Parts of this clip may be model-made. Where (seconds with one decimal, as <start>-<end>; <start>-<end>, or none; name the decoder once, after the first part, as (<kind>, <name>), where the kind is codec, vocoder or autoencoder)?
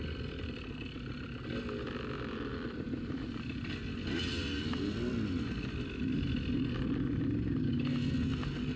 2.5-3.7 (vocoder, BigVGAN v2)